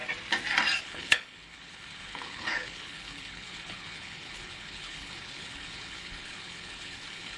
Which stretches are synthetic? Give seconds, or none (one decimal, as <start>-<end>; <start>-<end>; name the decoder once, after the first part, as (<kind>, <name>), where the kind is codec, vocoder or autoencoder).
0.8-7.4 (codec, HILCodec)